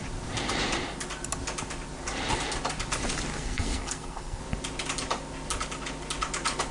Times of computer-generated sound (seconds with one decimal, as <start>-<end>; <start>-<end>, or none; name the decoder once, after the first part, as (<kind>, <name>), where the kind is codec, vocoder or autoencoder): 3.3-4.4 (codec, SNAC)